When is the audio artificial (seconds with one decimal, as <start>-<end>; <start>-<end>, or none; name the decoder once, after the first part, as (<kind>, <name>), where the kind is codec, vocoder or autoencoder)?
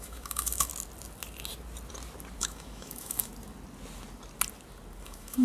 0.0-0.7 (autoencoder, DAC-VAE); 2.4-3.3; 5.0-5.4